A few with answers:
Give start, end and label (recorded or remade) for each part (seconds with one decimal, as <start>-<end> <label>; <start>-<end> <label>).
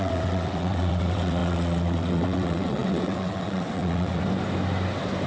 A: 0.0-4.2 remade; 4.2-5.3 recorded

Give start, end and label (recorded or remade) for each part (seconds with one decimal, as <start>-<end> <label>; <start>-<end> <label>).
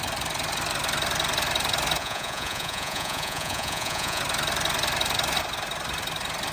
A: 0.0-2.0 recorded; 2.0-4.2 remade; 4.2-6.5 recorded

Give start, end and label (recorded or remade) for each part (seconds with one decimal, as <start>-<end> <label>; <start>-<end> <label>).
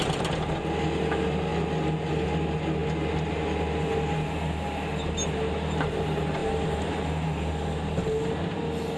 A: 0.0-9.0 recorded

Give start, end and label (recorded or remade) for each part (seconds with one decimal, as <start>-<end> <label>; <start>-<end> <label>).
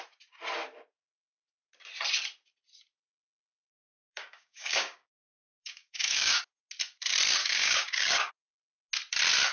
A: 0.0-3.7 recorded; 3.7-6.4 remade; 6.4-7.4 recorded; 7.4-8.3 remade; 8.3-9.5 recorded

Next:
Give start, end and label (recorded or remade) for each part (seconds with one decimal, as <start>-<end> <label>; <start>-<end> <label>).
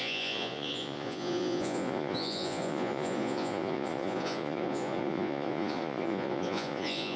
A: 0.0-7.2 remade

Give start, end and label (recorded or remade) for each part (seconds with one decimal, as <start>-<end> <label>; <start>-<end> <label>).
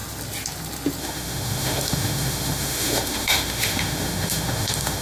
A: 0.0-1.0 recorded; 1.0-5.0 remade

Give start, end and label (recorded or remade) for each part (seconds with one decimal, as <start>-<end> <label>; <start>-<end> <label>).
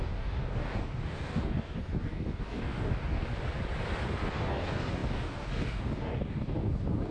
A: 0.0-3.3 remade; 3.3-4.3 recorded; 4.3-7.1 remade